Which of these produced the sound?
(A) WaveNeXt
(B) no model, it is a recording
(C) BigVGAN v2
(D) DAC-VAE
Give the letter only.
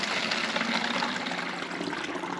B